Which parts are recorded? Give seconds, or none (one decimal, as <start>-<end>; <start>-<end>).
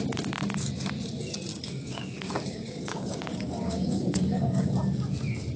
0.0-1.5; 4.7-5.6